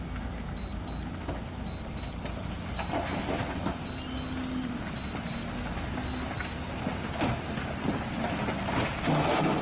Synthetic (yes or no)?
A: no